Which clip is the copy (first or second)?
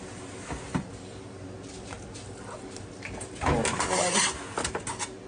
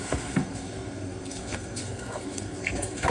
second